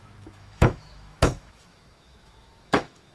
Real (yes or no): no